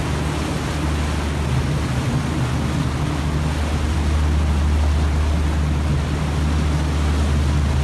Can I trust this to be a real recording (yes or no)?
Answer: yes